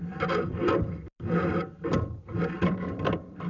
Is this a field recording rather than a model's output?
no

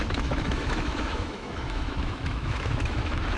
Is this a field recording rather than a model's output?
no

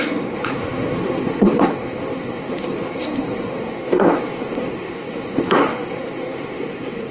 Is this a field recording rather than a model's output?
no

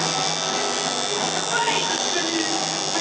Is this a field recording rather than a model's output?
yes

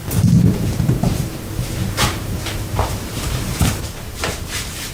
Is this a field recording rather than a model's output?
no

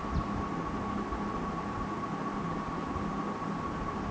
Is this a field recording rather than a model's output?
yes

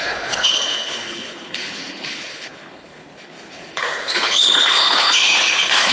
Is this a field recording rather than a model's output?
no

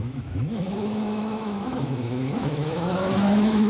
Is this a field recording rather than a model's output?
no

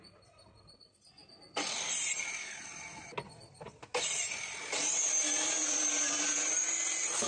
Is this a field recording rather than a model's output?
yes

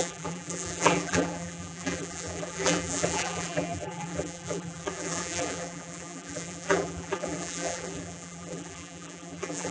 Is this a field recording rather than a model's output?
no